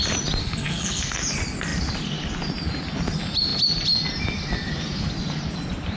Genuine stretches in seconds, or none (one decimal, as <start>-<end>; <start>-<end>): 0.0-0.4; 1.2-6.0